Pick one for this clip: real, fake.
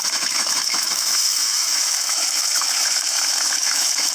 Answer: fake